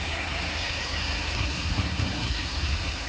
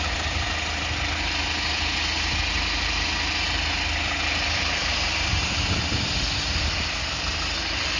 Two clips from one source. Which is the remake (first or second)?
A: first